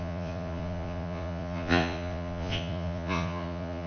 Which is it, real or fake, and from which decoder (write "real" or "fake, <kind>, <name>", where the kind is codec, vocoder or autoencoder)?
fake, vocoder, Vocos